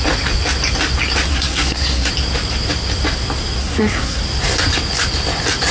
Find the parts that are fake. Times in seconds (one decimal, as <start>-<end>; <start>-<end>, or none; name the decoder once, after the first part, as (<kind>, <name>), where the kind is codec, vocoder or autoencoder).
1.3-2.1 (codec, SNAC); 3.6-4.2